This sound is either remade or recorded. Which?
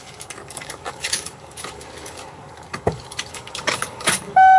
remade